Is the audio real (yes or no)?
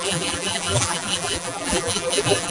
no